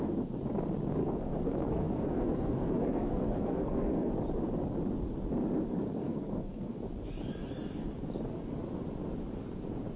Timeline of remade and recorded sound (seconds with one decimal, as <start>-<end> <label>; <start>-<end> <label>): 0.0-1.0 recorded; 1.0-4.1 remade; 4.1-6.0 recorded; 6.0-6.8 remade; 6.8-10.0 recorded